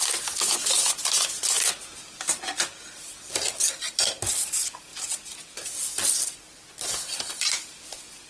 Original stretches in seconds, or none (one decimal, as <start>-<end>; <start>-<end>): 0.0-8.3